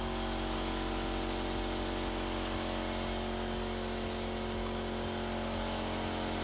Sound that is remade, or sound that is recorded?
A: recorded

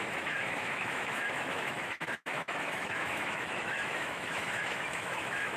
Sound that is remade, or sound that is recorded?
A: remade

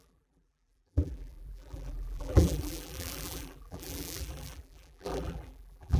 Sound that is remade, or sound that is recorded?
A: remade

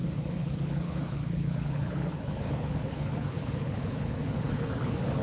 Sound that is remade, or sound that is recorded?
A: remade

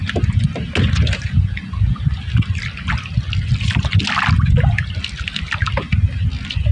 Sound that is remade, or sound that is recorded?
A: recorded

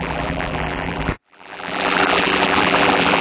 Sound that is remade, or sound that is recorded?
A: remade